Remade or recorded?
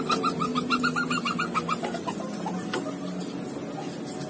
recorded